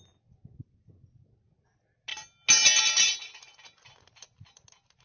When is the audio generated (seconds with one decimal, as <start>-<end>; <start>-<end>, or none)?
none